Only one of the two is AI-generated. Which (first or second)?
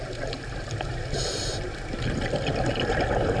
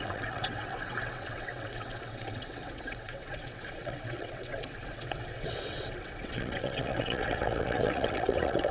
second